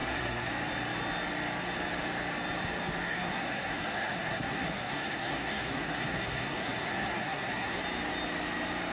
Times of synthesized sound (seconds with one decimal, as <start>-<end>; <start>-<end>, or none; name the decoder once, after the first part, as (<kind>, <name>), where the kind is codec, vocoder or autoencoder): 0.0-0.5 (codec, SNAC); 3.0-7.8

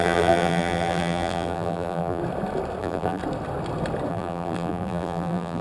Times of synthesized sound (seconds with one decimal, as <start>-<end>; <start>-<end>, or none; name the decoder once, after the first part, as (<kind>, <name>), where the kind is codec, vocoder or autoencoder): 0.0-2.2 (vocoder, BigVGAN v2); 2.8-3.2; 4.1-5.6

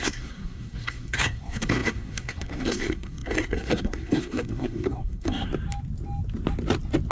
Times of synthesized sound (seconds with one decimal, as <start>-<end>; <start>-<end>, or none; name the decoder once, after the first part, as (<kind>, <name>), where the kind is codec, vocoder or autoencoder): 0.0-5.5 (codec, SNAC)

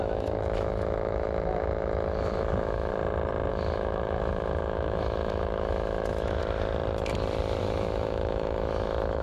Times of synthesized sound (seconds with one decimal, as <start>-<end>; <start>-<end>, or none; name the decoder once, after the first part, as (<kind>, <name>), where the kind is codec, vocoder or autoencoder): 0.0-2.9 (autoencoder, DAC-VAE); 3.5-6.4; 7.6-9.2

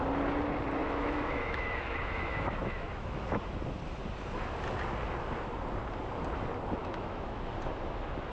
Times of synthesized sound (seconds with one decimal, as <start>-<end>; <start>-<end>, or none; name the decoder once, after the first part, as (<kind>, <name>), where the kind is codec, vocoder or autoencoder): 0.8-3.2 (autoencoder, DAC-VAE); 6.8-7.4

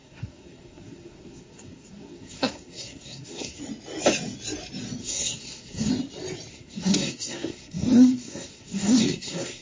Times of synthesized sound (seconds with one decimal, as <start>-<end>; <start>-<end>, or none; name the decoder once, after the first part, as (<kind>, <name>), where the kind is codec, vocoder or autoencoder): 0.0-3.6 (codec, SNAC); 5.0-5.9; 6.5-9.6

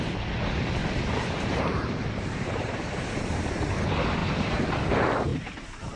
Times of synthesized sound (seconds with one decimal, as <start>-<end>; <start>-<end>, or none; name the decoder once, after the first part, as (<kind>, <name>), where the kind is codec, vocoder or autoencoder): 0.8-3.4 (vocoder, BigVGAN v2); 4.2-4.7; 5.3-6.0

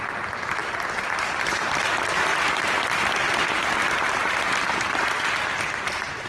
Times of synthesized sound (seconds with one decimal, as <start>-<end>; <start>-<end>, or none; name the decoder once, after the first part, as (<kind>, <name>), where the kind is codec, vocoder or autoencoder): none